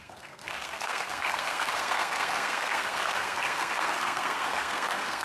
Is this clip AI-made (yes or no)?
yes